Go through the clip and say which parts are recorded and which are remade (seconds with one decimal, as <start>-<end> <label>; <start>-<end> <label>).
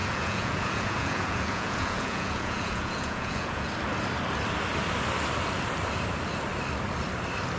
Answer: 0.0-3.7 remade; 3.7-7.6 recorded